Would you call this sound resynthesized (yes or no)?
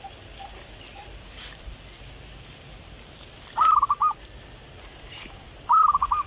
no